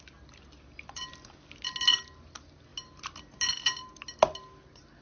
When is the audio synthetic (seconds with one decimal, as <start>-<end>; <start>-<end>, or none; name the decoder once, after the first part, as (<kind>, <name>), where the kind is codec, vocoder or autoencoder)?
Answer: none